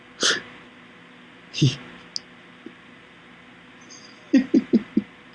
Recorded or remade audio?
recorded